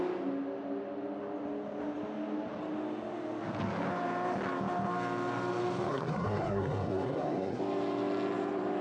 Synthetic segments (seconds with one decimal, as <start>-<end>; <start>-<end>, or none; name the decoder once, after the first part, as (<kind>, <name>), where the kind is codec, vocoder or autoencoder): 5.9-7.6 (codec, SNAC)